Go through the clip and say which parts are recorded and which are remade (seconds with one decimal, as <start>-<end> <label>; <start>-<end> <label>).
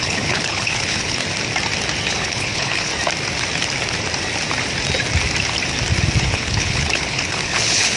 0.0-1.2 remade; 1.2-2.1 recorded; 2.1-2.9 remade; 2.9-6.2 recorded; 6.2-8.0 remade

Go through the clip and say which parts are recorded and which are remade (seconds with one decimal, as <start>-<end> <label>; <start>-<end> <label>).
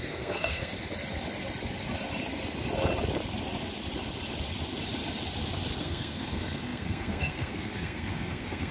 0.0-0.7 remade; 0.7-5.8 recorded; 5.8-8.7 remade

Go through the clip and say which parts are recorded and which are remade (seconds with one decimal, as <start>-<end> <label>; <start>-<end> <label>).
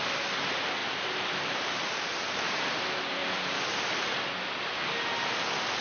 0.0-5.8 recorded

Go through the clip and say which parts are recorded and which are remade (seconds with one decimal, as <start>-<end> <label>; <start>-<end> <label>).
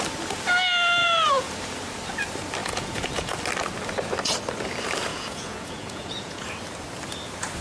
0.0-1.0 recorded; 1.0-1.5 remade; 1.5-2.6 recorded; 2.6-3.4 remade; 3.4-5.1 recorded; 5.1-6.4 remade; 6.4-7.6 recorded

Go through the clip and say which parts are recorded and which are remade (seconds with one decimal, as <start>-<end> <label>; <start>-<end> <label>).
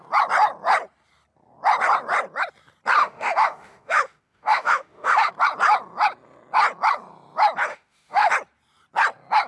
0.0-3.0 recorded; 3.0-5.3 remade; 5.3-7.7 recorded; 7.7-8.3 remade; 8.3-9.5 recorded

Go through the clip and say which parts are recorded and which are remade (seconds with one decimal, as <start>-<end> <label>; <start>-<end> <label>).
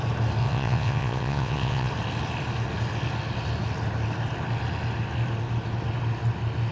0.0-0.4 recorded; 0.4-1.9 remade; 1.9-6.7 recorded